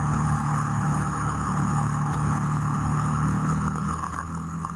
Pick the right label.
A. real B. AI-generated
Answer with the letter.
B